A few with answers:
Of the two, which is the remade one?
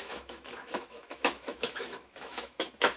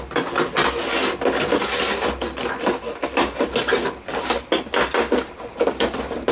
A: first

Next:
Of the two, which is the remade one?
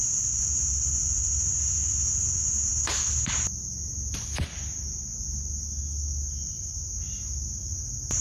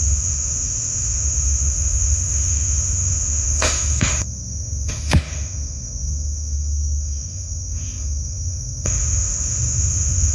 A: second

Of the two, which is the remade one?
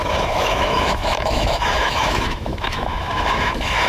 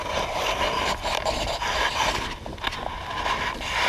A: first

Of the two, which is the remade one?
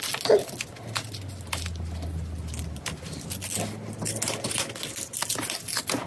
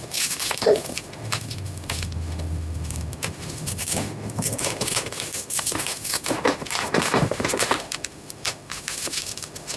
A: second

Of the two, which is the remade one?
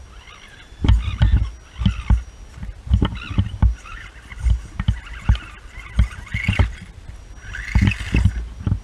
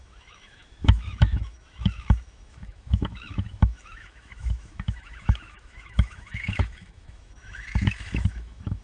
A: second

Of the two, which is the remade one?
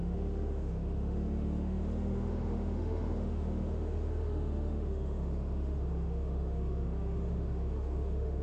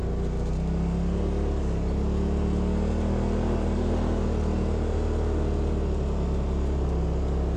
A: first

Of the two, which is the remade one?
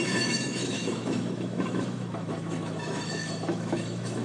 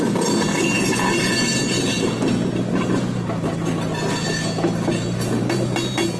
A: first